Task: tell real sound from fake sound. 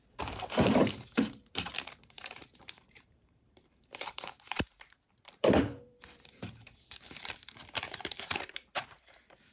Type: fake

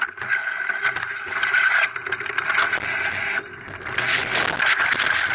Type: real